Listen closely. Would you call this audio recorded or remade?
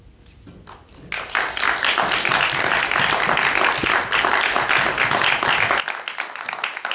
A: recorded